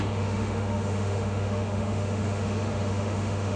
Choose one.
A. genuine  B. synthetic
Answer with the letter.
B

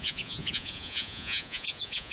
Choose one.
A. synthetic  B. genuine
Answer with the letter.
A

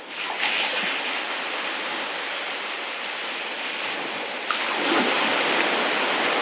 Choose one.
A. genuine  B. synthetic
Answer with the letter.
A